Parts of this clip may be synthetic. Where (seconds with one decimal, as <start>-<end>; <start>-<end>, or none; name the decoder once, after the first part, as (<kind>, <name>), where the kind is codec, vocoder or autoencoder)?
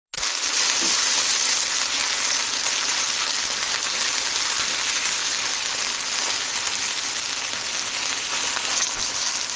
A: none